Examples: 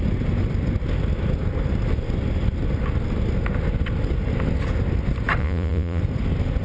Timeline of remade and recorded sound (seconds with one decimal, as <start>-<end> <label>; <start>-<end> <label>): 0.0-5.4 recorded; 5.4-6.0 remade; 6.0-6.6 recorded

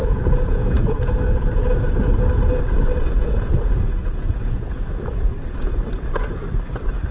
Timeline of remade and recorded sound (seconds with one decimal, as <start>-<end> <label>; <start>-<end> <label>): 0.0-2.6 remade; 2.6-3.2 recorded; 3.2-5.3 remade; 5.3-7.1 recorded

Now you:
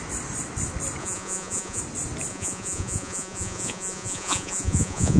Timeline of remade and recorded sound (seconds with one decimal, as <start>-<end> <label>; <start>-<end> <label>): 0.0-1.0 recorded; 1.0-1.8 remade; 1.8-2.3 recorded; 2.3-5.2 remade